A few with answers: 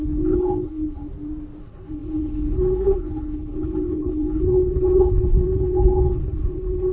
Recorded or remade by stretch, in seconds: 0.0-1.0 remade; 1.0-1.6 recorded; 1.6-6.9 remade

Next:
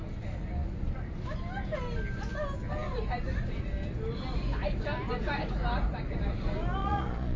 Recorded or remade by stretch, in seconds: 0.0-6.8 recorded; 6.8-7.4 remade

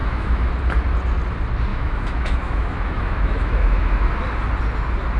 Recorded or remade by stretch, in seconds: 0.0-0.5 remade; 0.5-1.7 recorded; 1.7-4.1 remade; 4.1-5.2 recorded

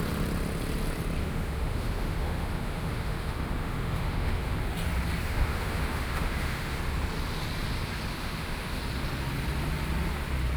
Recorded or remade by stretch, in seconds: 0.0-1.2 recorded; 1.2-4.6 remade; 4.6-5.2 recorded; 5.2-6.8 remade; 6.8-8.1 recorded; 8.1-8.8 remade; 8.8-10.6 recorded

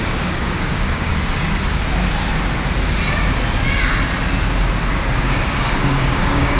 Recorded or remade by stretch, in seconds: 0.0-1.1 remade; 1.1-5.1 recorded; 5.1-6.6 remade

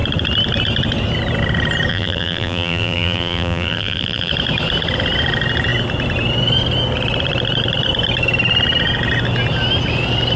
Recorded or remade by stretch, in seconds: 0.0-1.9 recorded; 1.9-4.3 remade; 4.3-10.4 recorded

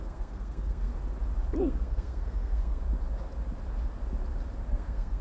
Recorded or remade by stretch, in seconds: 0.0-0.9 remade; 0.9-1.6 recorded; 1.6-2.8 remade; 2.8-4.7 recorded; 4.7-5.2 remade